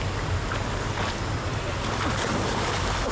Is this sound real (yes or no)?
yes